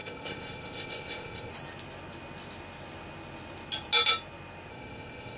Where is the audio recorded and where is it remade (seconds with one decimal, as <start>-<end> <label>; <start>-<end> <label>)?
0.0-1.5 remade; 1.5-4.7 recorded; 4.7-5.4 remade